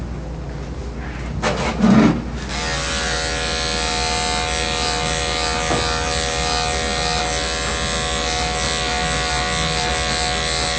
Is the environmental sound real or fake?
real